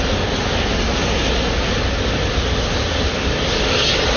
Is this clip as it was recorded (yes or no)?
yes